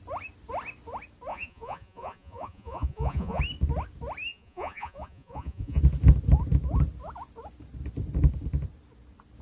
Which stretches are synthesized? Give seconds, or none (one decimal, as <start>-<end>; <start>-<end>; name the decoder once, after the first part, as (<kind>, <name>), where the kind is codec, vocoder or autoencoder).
1.3-3.4 (vocoder, Vocos); 4.3-5.8